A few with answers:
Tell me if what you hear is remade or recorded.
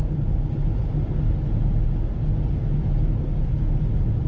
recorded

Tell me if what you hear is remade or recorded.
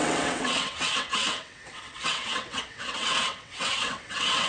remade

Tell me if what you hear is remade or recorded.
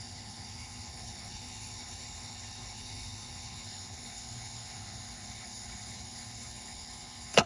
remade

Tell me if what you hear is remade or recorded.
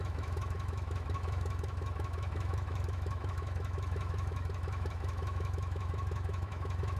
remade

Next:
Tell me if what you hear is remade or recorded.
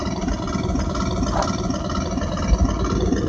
recorded